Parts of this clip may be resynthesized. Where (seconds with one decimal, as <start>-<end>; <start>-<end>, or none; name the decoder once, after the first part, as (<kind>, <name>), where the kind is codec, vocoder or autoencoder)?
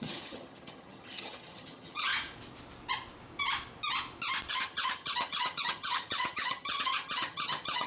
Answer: 0.0-2.1 (vocoder, HiFi-GAN); 4.5-7.9